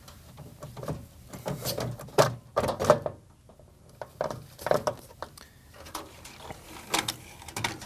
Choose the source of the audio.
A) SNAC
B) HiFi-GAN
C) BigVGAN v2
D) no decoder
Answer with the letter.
D